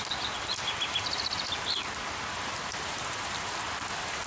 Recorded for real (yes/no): yes